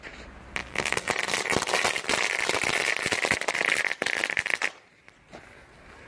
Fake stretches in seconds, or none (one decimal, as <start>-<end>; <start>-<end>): 0.6-1.1